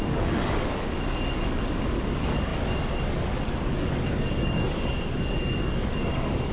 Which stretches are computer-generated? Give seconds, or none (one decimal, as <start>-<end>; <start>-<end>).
0.0-6.5